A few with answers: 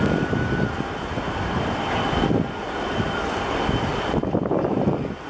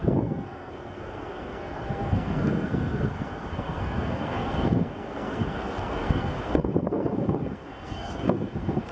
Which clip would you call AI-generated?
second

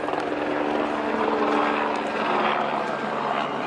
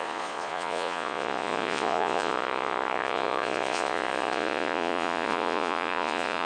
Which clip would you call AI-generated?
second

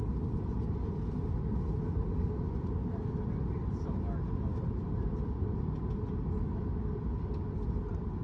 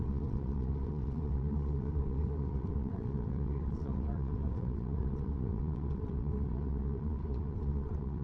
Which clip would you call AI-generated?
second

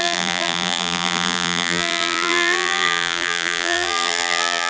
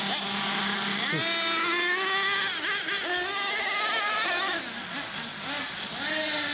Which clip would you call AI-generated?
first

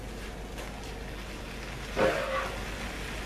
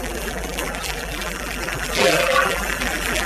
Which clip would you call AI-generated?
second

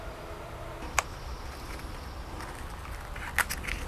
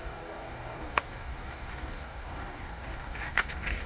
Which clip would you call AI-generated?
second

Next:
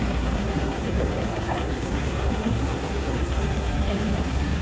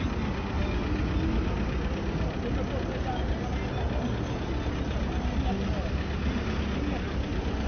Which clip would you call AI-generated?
first